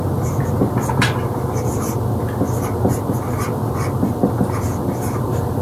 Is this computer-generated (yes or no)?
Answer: no